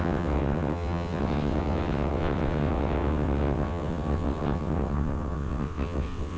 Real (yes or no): no